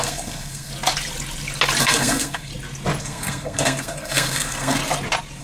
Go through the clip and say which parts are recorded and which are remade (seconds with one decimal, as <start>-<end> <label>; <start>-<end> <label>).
0.0-0.7 remade; 0.7-1.8 recorded; 1.8-2.5 remade; 2.5-3.0 recorded; 3.0-4.8 remade; 4.8-5.4 recorded